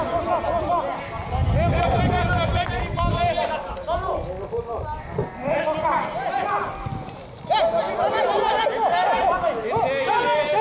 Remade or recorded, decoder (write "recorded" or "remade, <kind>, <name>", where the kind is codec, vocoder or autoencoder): recorded